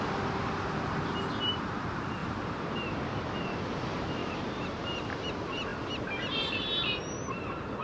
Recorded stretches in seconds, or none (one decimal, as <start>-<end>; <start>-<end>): 0.0-2.2; 3.2-4.2; 5.2-7.8